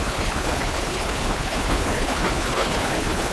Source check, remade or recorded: remade